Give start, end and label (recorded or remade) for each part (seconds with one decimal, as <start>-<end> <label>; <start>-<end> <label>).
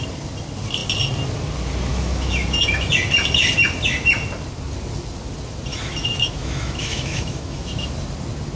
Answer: 0.0-1.9 recorded; 1.9-2.9 remade; 2.9-5.7 recorded; 5.7-7.9 remade; 7.9-8.6 recorded